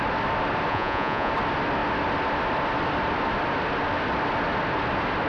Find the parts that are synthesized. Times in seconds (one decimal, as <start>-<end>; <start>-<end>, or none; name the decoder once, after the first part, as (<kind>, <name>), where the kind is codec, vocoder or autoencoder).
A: 0.7-1.3 (vocoder, Vocos)